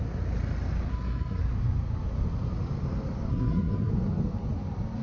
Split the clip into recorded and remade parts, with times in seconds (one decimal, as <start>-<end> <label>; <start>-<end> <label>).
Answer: 0.0-0.9 recorded; 0.9-1.4 remade; 1.4-3.3 recorded; 3.3-3.9 remade; 3.9-5.0 recorded